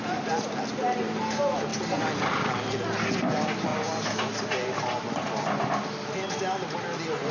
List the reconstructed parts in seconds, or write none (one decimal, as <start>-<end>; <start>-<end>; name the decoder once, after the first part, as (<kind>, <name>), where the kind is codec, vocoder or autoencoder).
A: none